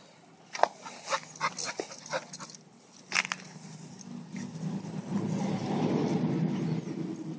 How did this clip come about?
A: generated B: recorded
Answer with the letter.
B